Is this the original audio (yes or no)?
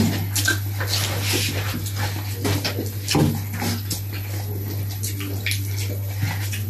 yes